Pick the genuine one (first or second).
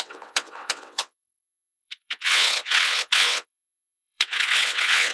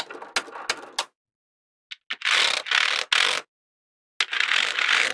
second